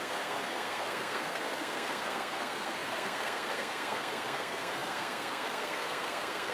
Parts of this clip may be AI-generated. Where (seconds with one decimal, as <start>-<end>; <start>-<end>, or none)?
0.0-6.5